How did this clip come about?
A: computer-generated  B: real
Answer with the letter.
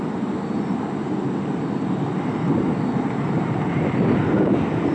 B